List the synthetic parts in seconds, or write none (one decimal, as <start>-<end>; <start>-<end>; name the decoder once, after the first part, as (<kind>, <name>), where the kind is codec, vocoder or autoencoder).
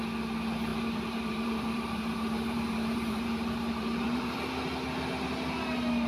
0.7-4.4 (vocoder, BigVGAN v2)